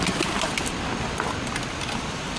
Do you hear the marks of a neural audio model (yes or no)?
no